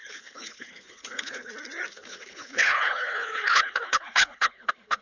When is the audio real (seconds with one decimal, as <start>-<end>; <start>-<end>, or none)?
1.5-1.9